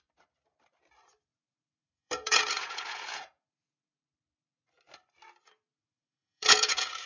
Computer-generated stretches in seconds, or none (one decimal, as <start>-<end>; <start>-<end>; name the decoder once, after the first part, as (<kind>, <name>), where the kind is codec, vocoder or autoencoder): 1.3-4.0 (vocoder, Vocos); 5.7-7.1